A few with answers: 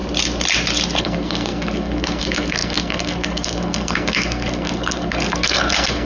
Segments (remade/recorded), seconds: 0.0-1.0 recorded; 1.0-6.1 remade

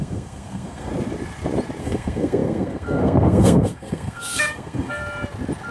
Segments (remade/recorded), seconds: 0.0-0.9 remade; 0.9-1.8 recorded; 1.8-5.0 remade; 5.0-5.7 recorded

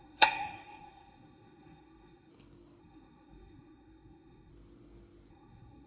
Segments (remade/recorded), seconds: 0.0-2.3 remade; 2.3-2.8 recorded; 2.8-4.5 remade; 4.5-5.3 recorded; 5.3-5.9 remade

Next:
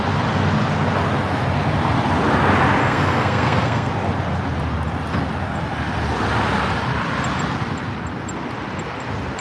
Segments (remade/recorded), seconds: 0.0-2.8 recorded; 2.8-3.9 remade; 3.9-9.4 recorded

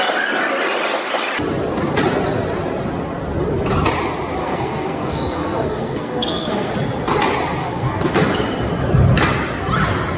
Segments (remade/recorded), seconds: 0.0-4.4 recorded; 4.4-6.7 remade; 6.7-7.6 recorded; 7.6-8.1 remade; 8.1-10.2 recorded